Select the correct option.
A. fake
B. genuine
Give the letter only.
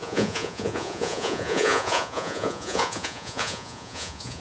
A